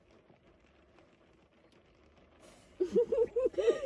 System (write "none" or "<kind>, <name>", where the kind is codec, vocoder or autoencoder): none